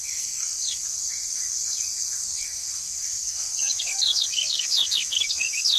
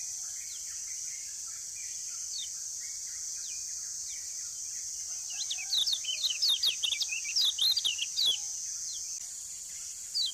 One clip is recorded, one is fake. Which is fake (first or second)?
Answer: first